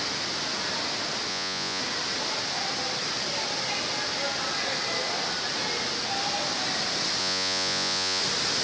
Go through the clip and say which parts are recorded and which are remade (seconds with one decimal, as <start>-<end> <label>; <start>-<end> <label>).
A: 0.0-1.3 recorded; 1.3-1.8 remade; 1.8-7.2 recorded; 7.2-8.2 remade; 8.2-8.6 recorded

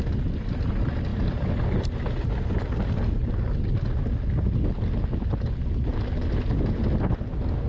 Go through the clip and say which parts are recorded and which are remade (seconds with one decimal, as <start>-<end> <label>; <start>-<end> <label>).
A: 0.0-7.7 recorded

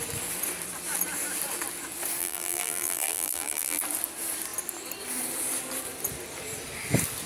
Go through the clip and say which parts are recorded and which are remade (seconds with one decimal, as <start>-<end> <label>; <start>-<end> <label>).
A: 0.0-2.2 recorded; 2.2-3.8 remade; 3.8-7.3 recorded

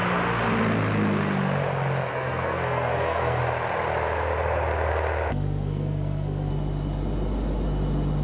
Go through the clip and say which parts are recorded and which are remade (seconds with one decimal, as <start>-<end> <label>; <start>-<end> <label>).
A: 0.0-2.1 recorded; 2.1-3.4 remade; 3.4-5.3 recorded; 5.3-6.5 remade; 6.5-8.2 recorded